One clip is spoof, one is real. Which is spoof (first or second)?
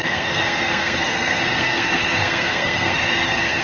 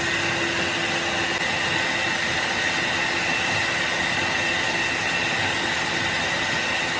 first